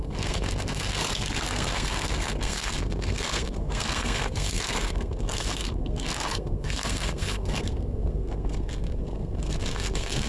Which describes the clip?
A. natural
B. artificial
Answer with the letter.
B